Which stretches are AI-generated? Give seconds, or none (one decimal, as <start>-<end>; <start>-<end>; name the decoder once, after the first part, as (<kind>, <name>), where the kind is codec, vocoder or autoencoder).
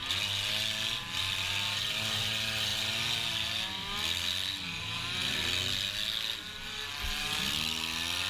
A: none